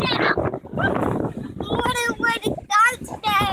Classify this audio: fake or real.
real